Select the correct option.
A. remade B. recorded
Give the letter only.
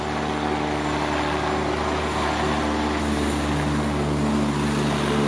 B